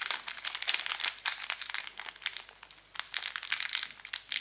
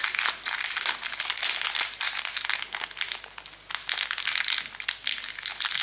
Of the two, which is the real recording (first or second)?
second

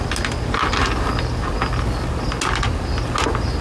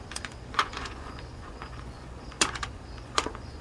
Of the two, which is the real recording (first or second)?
first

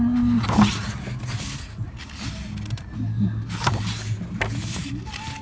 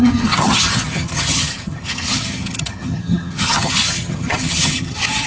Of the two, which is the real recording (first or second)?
first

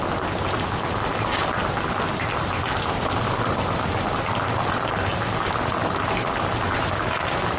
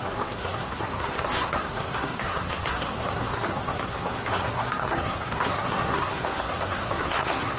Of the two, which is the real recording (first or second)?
first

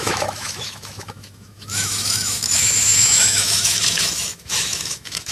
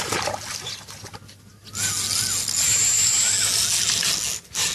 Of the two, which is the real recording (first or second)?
second